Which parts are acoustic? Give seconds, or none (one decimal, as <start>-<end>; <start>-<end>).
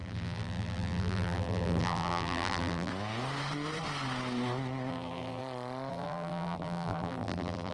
2.9-4.9; 5.4-5.9